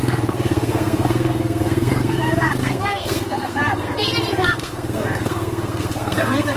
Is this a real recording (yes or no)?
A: no